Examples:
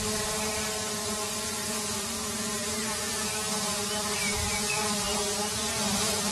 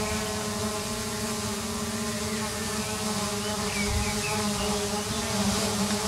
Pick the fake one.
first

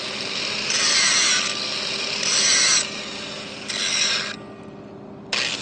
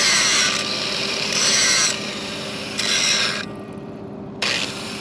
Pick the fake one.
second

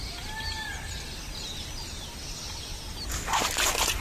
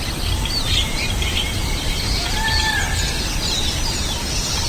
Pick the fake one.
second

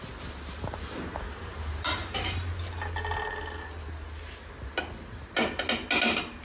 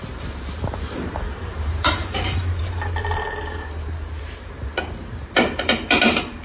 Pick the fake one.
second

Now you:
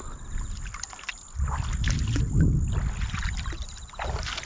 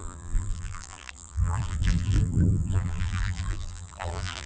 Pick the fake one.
second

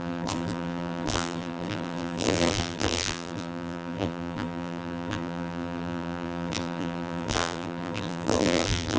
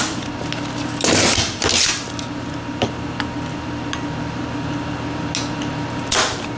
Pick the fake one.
first